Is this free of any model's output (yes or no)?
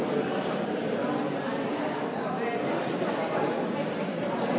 yes